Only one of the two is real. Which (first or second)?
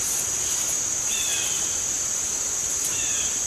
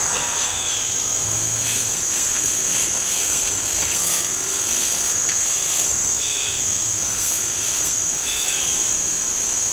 first